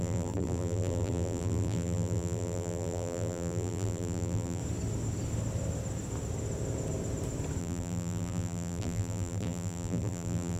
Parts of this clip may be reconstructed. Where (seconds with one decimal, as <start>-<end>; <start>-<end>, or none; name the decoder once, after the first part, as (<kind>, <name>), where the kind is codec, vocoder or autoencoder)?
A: 0.0-4.6 (vocoder, BigVGAN v2); 7.6-10.6